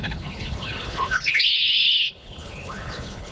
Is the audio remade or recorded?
remade